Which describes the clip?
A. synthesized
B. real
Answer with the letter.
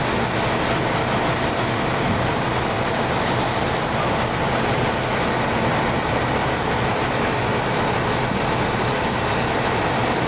B